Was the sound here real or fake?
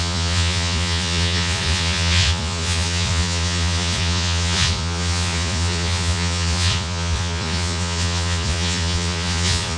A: fake